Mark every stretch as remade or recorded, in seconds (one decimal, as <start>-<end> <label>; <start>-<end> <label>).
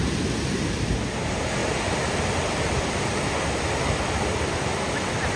0.0-1.6 recorded; 1.6-4.7 remade; 4.7-5.4 recorded